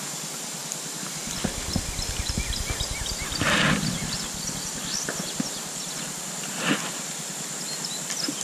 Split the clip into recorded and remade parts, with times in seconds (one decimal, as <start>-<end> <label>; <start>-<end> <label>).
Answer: 0.0-8.4 recorded